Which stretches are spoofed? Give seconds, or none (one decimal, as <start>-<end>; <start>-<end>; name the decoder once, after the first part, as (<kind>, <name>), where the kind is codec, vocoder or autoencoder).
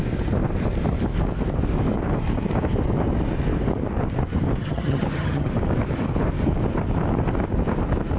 4.6-5.5 (vocoder, HiFi-GAN)